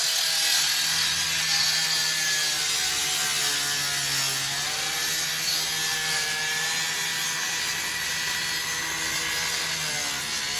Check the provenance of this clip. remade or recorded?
recorded